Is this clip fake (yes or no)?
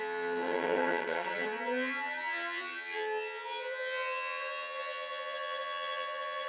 yes